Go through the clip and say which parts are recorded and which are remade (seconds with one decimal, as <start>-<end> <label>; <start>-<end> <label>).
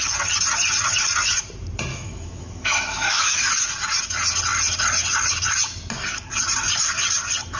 0.0-1.9 recorded; 1.9-3.5 remade; 3.5-7.6 recorded